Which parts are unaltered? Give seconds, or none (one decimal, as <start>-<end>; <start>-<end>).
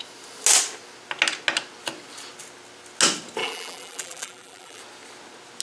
0.0-3.4; 4.8-5.6